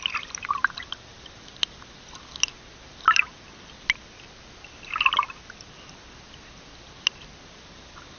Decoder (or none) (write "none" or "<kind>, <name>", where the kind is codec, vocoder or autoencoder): none